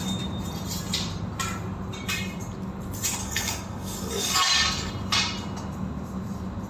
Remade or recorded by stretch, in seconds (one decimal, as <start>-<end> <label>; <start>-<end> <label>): 0.0-3.2 recorded; 3.2-4.9 remade; 4.9-6.7 recorded